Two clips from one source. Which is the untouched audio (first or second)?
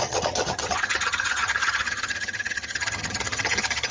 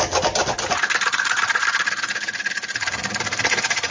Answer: second